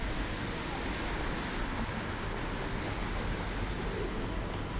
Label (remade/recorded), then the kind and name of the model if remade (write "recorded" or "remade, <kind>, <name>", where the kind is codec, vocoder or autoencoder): recorded